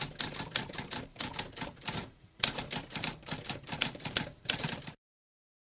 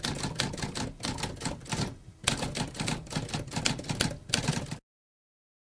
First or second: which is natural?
second